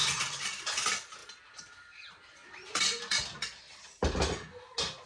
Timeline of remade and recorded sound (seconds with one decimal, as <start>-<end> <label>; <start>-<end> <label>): 0.0-0.6 remade; 0.6-1.2 recorded; 1.2-4.3 remade; 4.3-5.1 recorded